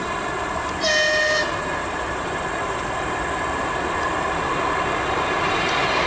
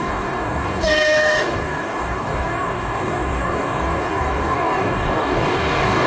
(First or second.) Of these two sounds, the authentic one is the first